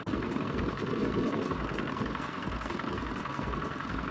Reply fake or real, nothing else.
fake